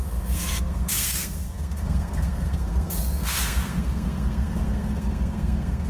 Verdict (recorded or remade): remade